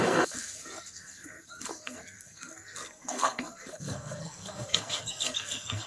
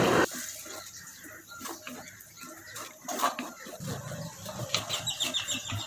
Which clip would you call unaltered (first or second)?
second